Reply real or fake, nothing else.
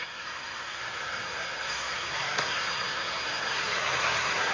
fake